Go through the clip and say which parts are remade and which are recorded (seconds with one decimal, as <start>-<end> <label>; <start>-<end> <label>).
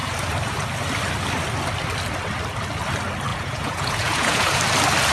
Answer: 0.0-3.3 recorded; 3.3-4.6 remade; 4.6-5.1 recorded